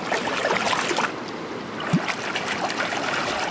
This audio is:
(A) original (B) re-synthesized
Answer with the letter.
A